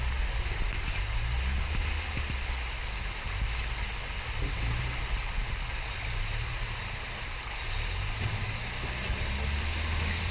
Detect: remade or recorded recorded